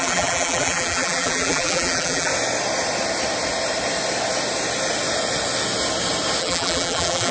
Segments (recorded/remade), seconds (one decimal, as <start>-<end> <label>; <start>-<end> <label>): 0.0-2.3 remade; 2.3-6.4 recorded; 6.4-7.3 remade